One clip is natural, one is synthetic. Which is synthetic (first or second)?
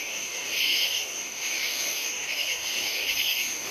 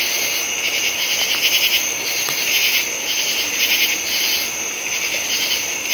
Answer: first